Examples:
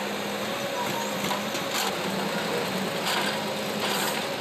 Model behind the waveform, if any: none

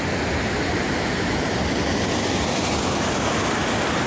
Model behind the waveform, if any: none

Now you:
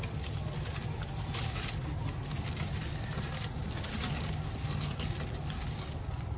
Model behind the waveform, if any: none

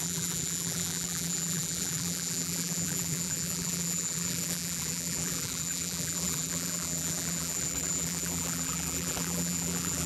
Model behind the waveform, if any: vocoder, BigVGAN v2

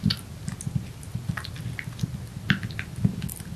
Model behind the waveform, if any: none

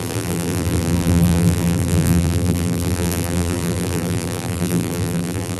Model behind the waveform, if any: vocoder, BigVGAN v2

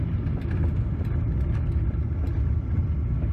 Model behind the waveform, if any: none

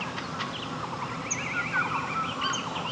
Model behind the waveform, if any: none